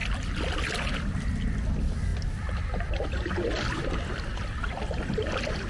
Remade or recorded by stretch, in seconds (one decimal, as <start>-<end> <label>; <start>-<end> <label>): 0.0-2.1 recorded; 2.1-5.0 remade; 5.0-5.7 recorded